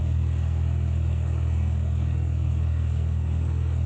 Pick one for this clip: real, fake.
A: fake